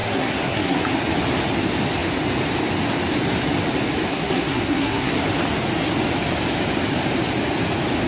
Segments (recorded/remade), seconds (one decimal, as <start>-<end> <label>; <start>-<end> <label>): 0.0-0.8 remade; 0.8-4.1 recorded; 4.1-5.1 remade; 5.1-8.1 recorded